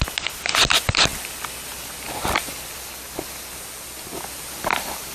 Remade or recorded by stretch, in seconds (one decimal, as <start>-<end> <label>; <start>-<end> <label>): 0.0-5.1 recorded